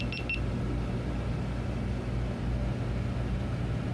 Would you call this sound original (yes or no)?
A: yes